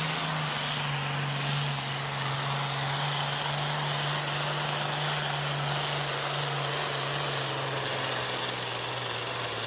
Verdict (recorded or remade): recorded